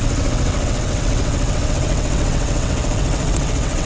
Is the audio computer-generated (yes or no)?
yes